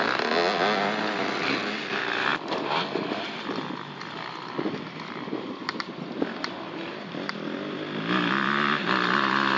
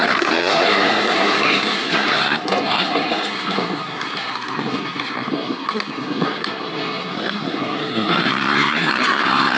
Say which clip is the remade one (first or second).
second